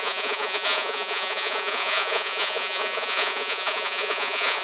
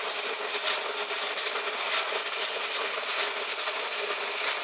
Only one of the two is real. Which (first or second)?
second